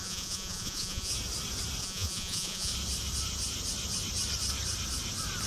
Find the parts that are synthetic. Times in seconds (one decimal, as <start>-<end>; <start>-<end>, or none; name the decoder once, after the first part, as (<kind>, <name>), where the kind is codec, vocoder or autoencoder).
0.0-1.1 (vocoder, Vocos); 1.8-2.7